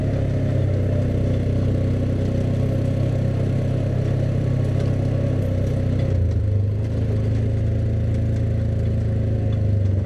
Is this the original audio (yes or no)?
yes